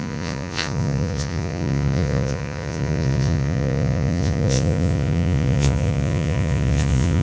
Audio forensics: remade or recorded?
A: remade